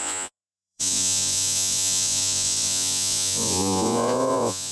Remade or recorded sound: remade